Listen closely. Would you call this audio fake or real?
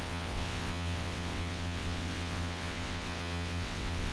fake